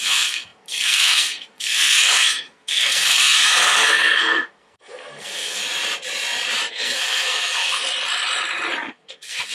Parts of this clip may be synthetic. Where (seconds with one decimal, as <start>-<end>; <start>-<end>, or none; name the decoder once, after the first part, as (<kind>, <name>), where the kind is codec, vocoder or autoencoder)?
0.0-5.6 (codec, SNAC); 6.7-7.8; 8.9-9.5